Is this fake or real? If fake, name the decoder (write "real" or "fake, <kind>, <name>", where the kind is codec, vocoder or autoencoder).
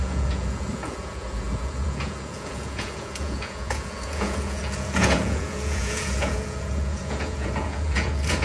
fake, vocoder, Vocos